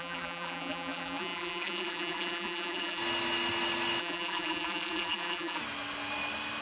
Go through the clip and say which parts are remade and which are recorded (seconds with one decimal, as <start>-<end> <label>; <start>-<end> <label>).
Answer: 0.0-3.0 remade; 3.0-4.0 recorded; 4.0-5.6 remade; 5.6-6.6 recorded